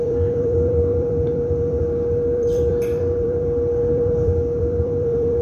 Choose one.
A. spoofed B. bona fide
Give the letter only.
A